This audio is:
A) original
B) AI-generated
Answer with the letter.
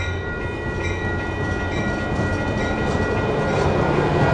A